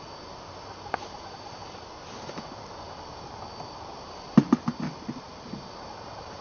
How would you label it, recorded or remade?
recorded